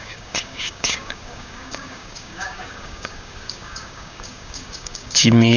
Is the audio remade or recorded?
remade